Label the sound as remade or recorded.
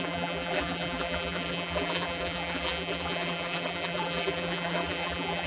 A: remade